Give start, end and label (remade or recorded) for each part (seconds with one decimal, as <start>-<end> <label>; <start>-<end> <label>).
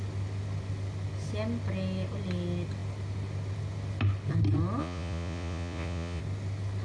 0.0-4.8 recorded; 4.8-6.2 remade; 6.2-6.8 recorded